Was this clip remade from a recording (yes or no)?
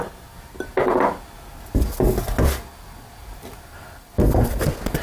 no